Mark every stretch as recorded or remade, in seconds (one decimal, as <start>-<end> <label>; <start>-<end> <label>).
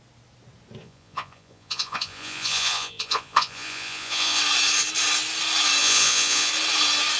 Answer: 0.0-0.8 recorded; 0.8-4.4 remade; 4.4-5.8 recorded; 5.8-6.5 remade; 6.5-7.2 recorded